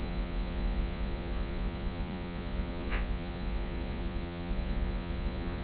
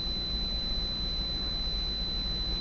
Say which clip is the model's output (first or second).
first